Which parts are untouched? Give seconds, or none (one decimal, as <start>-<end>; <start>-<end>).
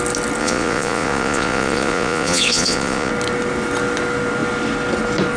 0.0-0.4; 3.1-5.4